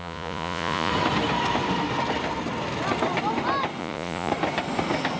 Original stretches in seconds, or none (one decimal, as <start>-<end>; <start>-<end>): 0.9-3.8; 4.3-5.2